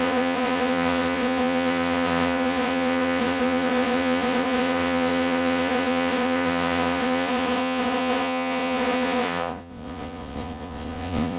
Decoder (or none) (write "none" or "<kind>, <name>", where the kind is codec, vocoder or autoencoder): vocoder, Vocos